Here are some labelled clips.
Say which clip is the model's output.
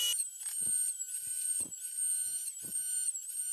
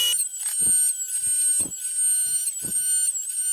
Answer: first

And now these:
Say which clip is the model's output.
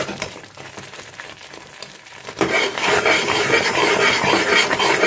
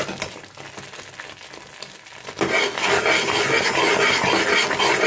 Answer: first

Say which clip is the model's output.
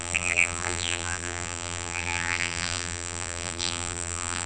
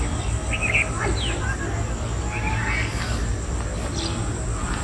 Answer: first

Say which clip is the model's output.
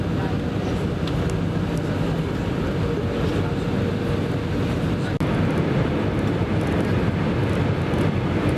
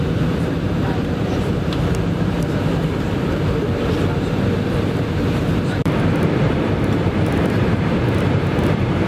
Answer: second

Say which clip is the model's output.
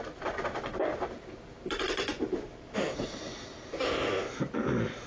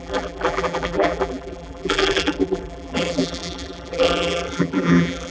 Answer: second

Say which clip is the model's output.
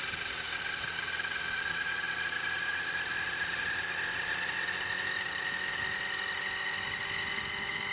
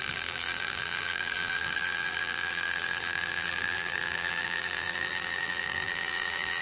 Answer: second